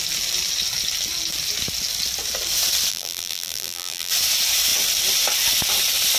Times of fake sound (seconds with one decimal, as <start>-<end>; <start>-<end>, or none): 2.9-4.1